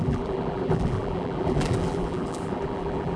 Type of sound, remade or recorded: remade